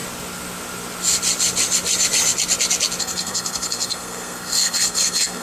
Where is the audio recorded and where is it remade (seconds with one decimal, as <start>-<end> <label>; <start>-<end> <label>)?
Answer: 0.0-3.0 recorded; 3.0-5.4 remade